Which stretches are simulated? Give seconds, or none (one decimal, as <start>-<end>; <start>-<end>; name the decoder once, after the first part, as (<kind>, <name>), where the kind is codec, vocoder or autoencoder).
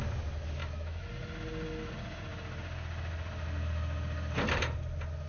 0.6-1.1 (autoencoder, DAC-VAE)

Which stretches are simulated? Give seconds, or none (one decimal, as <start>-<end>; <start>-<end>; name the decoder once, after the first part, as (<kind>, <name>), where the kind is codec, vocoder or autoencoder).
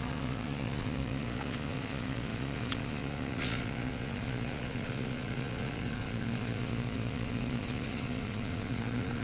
0.0-9.2 (vocoder, Vocos)